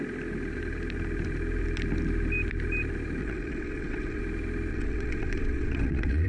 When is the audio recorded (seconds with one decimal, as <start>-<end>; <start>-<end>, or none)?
0.0-3.2; 4.2-4.7